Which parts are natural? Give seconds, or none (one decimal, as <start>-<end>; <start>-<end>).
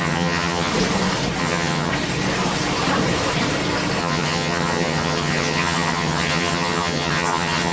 0.7-1.4; 1.9-4.0